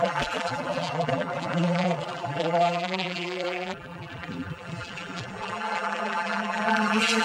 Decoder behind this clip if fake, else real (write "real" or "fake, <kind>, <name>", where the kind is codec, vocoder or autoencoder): fake, vocoder, BigVGAN v2